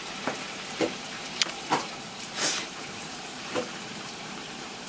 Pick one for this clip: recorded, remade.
remade